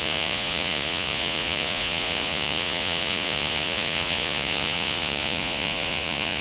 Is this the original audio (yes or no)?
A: no